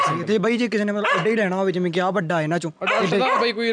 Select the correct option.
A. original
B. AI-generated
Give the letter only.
A